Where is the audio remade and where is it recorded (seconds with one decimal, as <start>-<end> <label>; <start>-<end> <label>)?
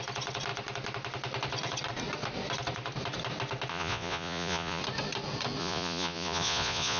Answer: 0.0-3.7 recorded; 3.7-4.8 remade; 4.8-5.6 recorded; 5.6-7.0 remade